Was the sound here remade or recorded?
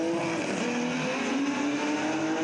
recorded